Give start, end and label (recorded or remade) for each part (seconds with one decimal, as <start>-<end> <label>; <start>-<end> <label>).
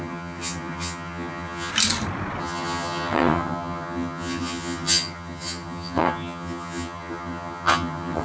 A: 0.0-1.7 remade; 1.7-2.4 recorded; 2.4-8.2 remade